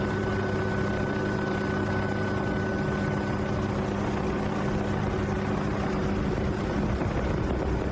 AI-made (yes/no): no